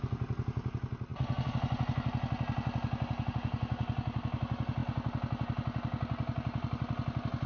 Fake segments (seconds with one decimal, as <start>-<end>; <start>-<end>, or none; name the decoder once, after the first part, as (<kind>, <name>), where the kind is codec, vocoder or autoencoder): none